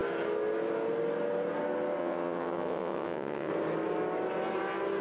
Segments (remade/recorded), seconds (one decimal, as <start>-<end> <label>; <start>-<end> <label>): 0.0-2.0 recorded; 2.0-3.5 remade; 3.5-5.0 recorded